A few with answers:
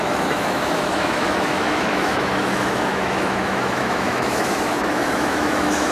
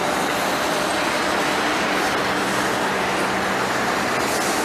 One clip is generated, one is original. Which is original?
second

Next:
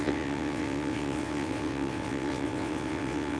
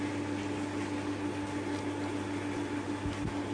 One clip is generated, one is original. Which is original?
second